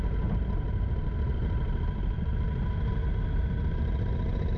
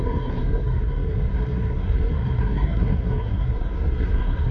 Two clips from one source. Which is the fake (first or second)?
second